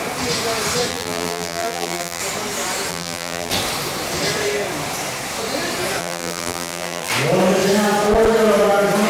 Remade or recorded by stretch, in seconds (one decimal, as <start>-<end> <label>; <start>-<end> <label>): 0.0-0.9 recorded; 0.9-2.2 remade; 2.2-2.9 recorded; 2.9-3.5 remade; 3.5-6.0 recorded; 6.0-7.1 remade; 7.1-9.1 recorded